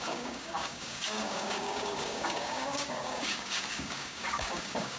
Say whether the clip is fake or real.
fake